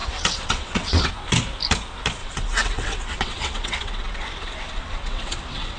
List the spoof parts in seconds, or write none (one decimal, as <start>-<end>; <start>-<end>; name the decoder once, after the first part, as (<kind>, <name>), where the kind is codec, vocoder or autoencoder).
0.0-1.1 (vocoder, WaveNeXt); 2.2-5.8